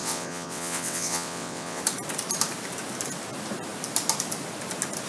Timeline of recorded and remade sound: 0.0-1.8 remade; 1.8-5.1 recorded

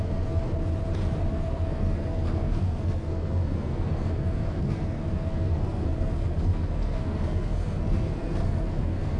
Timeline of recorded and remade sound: 0.0-0.4 remade; 0.4-1.3 recorded; 1.3-9.2 remade

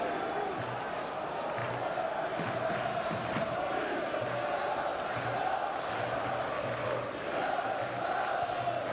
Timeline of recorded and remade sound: 0.0-8.9 recorded

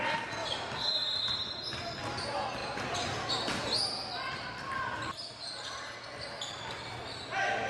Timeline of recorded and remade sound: 0.0-7.7 recorded

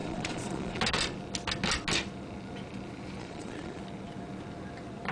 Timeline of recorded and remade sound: 0.0-0.8 remade; 0.8-3.2 recorded; 3.2-3.8 remade; 3.8-5.1 recorded